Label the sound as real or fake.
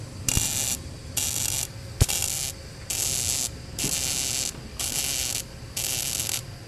real